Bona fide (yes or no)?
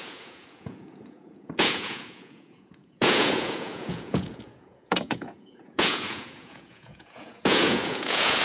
no